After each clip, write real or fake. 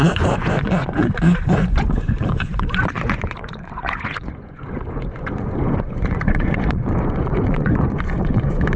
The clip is fake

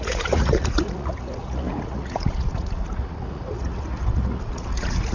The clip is fake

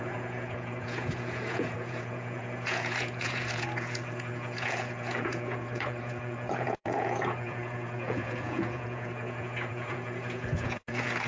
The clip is fake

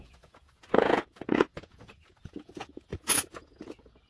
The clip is fake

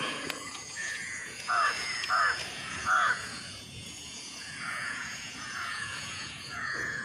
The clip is fake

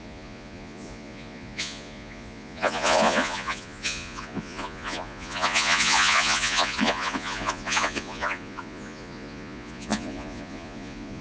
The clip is fake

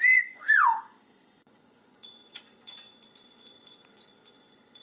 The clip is fake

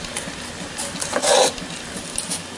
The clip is real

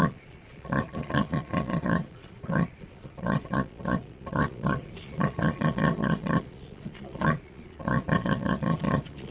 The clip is fake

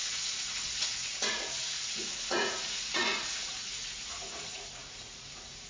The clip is fake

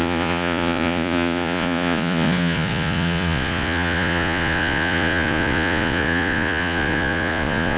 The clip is fake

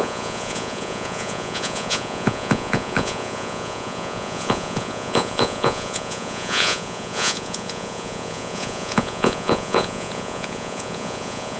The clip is fake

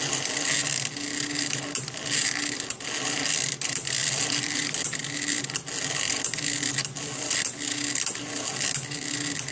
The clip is real